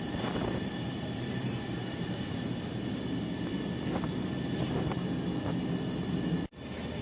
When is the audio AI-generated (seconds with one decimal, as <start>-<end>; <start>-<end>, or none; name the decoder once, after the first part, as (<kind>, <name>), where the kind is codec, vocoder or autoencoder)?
none